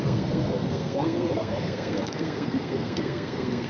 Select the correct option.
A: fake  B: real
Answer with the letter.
A